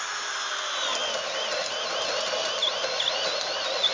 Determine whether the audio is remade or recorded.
remade